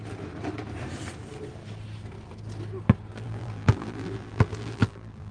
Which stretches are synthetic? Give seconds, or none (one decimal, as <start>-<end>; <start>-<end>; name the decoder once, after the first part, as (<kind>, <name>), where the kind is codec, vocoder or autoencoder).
3.1-5.3 (vocoder, BigVGAN v2)